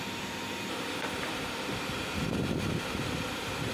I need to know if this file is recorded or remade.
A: remade